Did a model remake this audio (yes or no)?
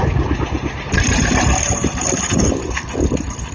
no